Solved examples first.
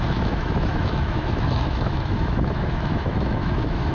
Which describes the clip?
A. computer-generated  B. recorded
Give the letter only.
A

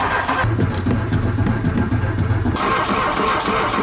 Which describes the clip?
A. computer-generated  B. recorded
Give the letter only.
B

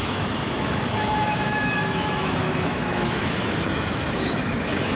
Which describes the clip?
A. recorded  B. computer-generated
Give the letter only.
B